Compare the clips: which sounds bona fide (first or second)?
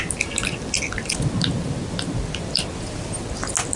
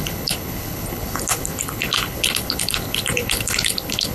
first